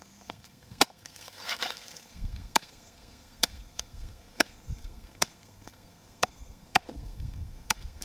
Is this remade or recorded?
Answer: remade